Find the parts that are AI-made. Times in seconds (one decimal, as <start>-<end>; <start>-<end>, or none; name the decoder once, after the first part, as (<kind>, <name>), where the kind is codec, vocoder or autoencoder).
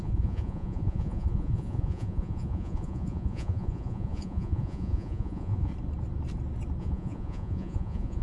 0.0-5.7 (vocoder, Vocos); 6.8-8.2